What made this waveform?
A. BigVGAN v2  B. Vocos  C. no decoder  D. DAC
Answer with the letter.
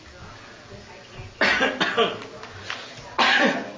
C